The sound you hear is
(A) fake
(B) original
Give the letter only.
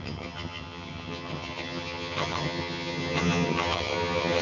A